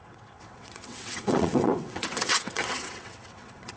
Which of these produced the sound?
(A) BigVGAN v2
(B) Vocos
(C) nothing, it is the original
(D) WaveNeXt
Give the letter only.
D